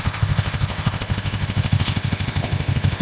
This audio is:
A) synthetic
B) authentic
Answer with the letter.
A